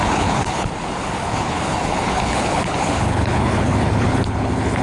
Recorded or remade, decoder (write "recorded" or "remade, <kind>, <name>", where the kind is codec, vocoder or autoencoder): remade, codec, HILCodec